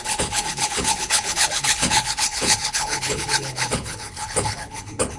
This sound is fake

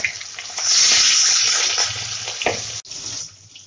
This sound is real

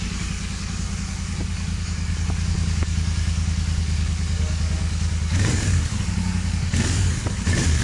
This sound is fake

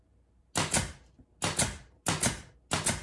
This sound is real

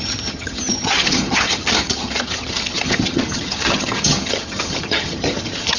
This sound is fake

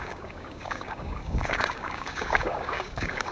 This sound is fake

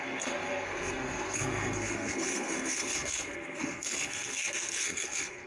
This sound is fake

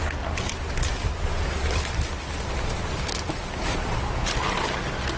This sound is real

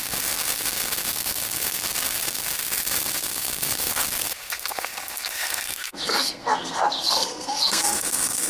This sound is fake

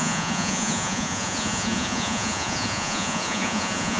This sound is fake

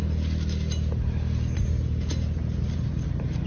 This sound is real